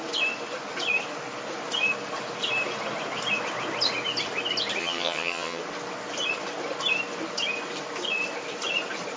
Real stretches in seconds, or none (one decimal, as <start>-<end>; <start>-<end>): 0.0-4.8; 5.6-9.2